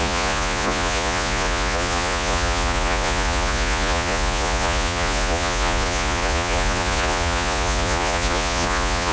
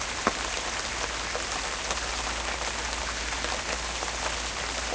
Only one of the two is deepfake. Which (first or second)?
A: first